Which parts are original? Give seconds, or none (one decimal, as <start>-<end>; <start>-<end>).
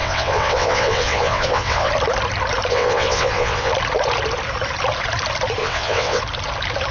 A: 1.9-2.7; 3.7-5.6; 6.2-6.9